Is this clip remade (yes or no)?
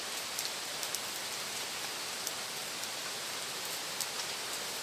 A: no